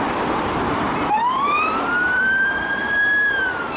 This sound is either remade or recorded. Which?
remade